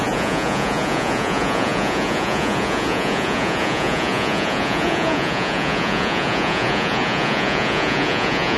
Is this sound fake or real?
fake